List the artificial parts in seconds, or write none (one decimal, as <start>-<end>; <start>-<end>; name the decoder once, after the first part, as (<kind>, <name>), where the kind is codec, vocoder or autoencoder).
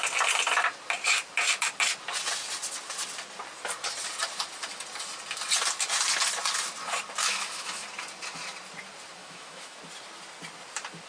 7.2-7.8 (autoencoder, DAC-VAE); 9.2-9.8